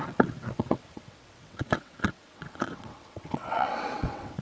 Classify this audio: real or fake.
fake